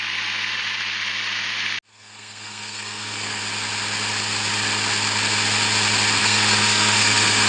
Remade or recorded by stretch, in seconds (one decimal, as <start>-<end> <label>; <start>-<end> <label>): 0.0-1.9 recorded; 1.9-3.4 remade; 3.4-6.2 recorded; 6.2-7.5 remade